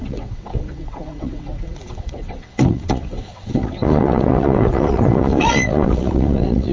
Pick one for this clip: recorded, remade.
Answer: remade